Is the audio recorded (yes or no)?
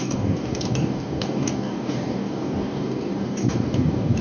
no